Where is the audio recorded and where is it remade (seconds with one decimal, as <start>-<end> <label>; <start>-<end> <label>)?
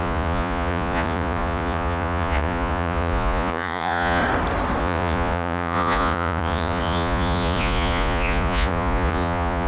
0.0-4.2 remade; 4.2-4.8 recorded; 4.8-9.7 remade